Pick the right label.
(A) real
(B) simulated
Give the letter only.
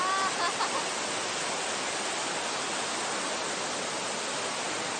A